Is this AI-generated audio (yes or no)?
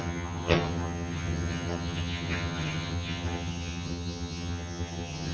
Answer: yes